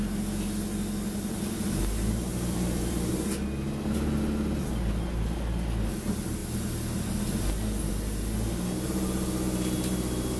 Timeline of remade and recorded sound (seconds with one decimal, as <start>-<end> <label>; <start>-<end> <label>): 0.0-2.3 recorded; 2.3-3.1 remade; 3.1-10.4 recorded